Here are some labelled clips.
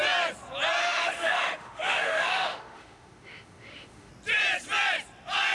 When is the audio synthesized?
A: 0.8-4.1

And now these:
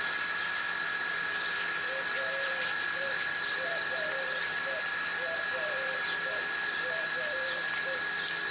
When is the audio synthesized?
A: none

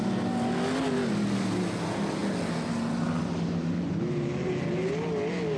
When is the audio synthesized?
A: none

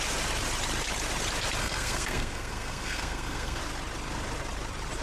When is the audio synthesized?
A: 1.6-3.6

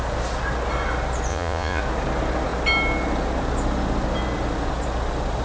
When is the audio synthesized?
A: 1.3-1.8

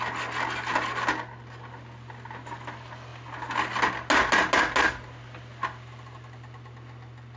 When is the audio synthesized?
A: none

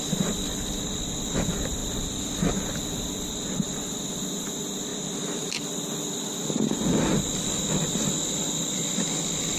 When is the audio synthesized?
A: none

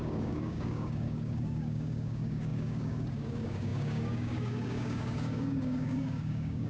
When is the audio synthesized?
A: 0.0-6.7